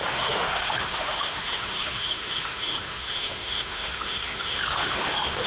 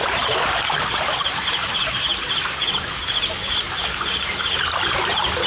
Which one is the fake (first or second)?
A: first